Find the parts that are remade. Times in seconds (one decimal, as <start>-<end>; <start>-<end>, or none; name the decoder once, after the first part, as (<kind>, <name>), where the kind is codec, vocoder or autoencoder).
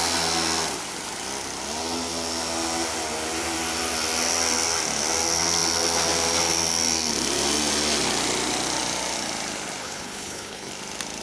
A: 9.8-10.7 (codec, HILCodec)